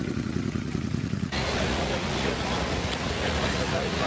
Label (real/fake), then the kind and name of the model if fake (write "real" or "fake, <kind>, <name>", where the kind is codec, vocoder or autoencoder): fake, vocoder, Vocos